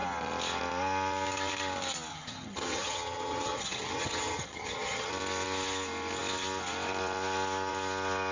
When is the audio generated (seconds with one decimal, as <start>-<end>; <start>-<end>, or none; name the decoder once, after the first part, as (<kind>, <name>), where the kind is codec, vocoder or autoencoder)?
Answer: 2.1-5.1 (vocoder, HiFi-GAN)